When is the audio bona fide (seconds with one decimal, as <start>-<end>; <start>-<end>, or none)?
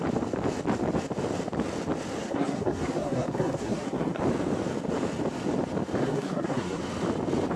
0.0-2.2; 4.2-6.0; 6.8-7.6